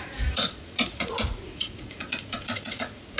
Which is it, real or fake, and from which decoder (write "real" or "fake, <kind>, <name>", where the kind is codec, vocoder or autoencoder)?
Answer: fake, vocoder, Vocos